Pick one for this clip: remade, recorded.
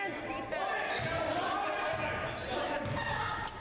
recorded